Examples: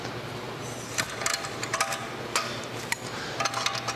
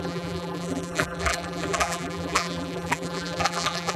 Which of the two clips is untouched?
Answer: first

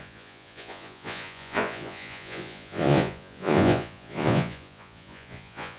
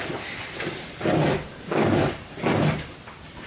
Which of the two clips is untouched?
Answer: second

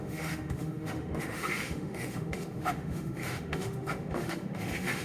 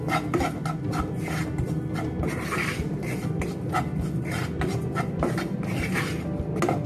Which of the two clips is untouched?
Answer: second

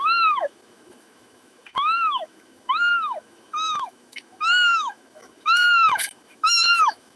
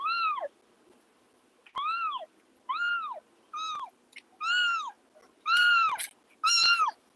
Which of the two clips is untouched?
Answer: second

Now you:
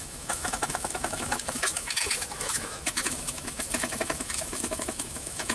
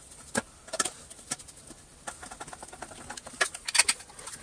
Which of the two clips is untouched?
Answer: second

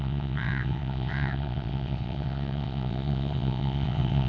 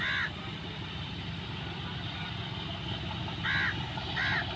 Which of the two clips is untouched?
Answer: second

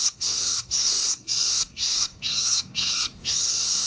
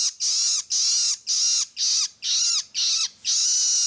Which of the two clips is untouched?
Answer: second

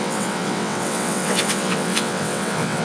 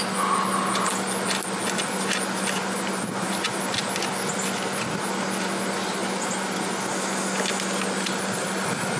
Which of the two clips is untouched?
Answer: second